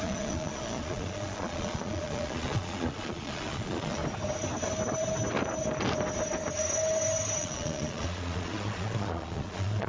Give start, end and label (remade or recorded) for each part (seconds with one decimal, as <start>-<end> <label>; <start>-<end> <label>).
0.0-4.0 remade; 4.0-7.4 recorded; 7.4-9.9 remade

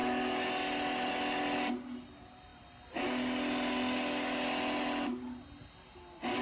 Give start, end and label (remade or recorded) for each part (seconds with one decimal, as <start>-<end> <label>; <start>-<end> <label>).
0.0-6.4 recorded